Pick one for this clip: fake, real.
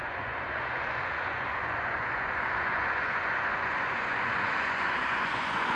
fake